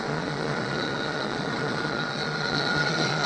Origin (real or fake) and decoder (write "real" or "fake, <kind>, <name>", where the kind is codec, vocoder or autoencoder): fake, vocoder, Vocos